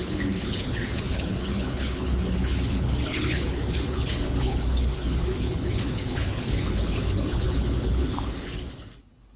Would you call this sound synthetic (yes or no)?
yes